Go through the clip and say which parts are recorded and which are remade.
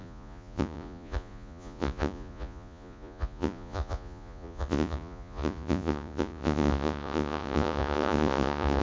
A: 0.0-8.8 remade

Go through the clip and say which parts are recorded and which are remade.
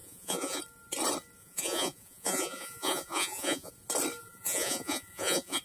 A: 0.0-0.6 remade; 0.6-1.4 recorded; 1.4-3.7 remade; 3.7-4.2 recorded; 4.2-5.6 remade